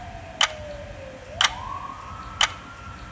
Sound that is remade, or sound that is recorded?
recorded